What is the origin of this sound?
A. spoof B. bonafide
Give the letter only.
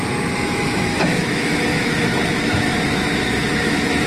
A